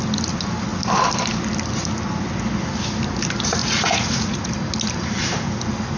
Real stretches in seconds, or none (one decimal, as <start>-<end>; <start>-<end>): 0.0-3.6; 4.5-6.0